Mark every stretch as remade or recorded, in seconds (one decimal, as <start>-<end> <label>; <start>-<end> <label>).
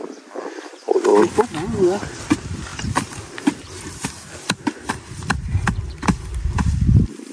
0.0-7.3 recorded